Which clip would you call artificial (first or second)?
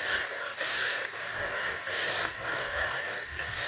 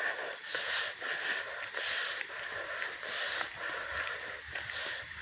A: first